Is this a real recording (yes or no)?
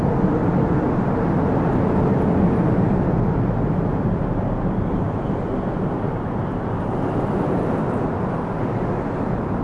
yes